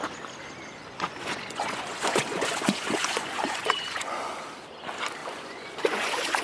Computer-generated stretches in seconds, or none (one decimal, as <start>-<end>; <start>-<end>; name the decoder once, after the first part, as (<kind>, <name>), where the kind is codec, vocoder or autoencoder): 0.7-4.4 (vocoder, Vocos); 5.2-6.4